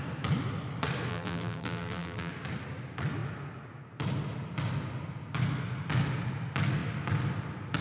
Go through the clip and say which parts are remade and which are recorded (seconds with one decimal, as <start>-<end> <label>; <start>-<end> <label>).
0.0-1.1 recorded; 1.1-2.3 remade; 2.3-7.8 recorded